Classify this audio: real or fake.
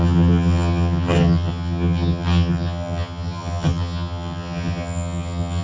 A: fake